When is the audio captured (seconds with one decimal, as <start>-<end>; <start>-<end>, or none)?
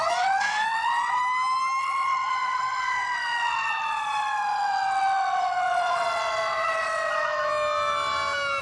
1.2-1.8; 7.5-8.6